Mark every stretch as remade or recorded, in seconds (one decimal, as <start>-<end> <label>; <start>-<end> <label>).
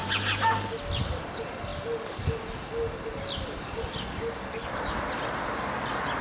0.0-6.2 recorded